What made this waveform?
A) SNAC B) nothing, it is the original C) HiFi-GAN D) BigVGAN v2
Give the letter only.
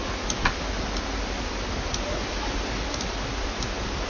B